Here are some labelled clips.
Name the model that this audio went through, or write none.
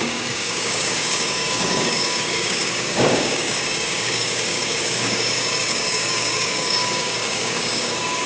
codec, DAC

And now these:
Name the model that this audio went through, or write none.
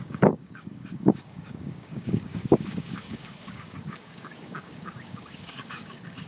codec, DAC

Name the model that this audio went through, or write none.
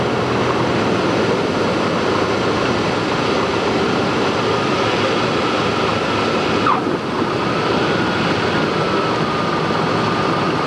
none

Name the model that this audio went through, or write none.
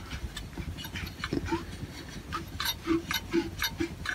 none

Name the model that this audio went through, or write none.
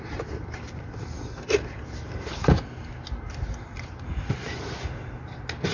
none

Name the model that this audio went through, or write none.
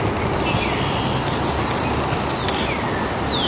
none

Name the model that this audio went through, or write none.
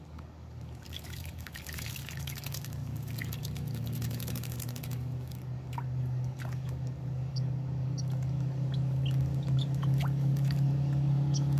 codec, DAC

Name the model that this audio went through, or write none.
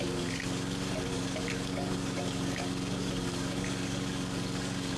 codec, DAC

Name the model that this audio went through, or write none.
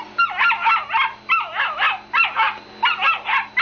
none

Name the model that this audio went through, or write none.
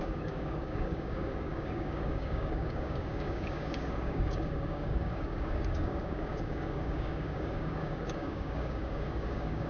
codec, DAC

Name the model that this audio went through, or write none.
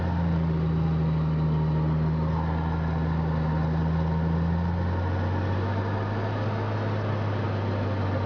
none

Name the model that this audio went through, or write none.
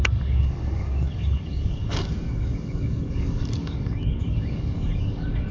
codec, DAC